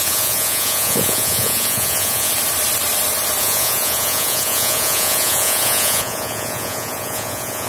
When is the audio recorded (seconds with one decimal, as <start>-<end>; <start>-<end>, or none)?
2.3-3.4